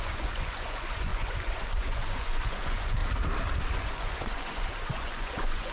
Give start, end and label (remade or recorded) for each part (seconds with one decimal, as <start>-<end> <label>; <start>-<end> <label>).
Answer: 0.0-3.0 remade; 3.0-3.7 recorded; 3.7-5.7 remade